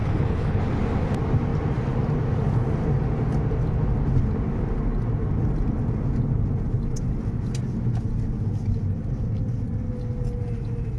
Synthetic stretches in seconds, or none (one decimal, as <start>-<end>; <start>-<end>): 0.0-0.6